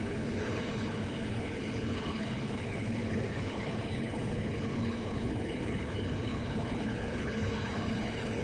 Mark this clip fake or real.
fake